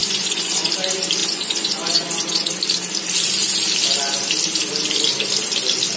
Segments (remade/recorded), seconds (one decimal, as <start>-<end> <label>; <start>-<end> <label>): 0.0-0.7 remade; 0.7-1.2 recorded; 1.2-2.6 remade; 2.6-6.0 recorded